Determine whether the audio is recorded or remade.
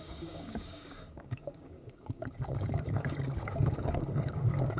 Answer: remade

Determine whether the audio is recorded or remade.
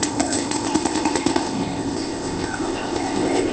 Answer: remade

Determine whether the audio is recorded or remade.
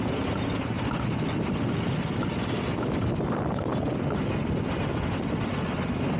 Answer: recorded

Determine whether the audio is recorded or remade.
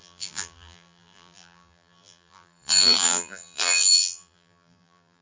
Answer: remade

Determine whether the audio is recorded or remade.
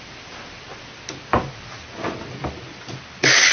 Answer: recorded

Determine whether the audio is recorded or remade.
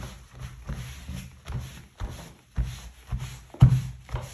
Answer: recorded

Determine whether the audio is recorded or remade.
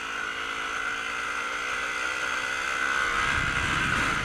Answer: recorded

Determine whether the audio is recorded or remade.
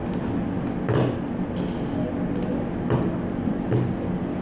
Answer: recorded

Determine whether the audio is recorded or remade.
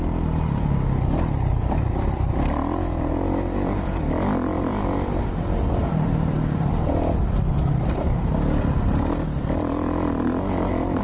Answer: remade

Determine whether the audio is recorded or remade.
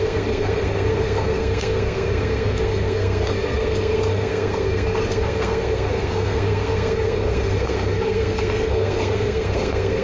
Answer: remade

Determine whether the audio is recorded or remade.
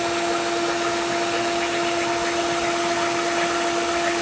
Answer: recorded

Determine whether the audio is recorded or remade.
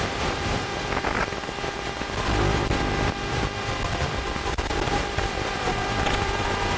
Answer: remade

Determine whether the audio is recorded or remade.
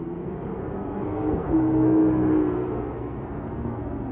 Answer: remade